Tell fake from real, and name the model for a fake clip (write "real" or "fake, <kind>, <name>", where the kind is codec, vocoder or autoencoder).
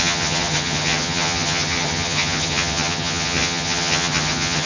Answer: fake, vocoder, HiFi-GAN